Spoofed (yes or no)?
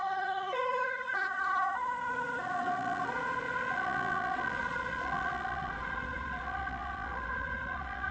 yes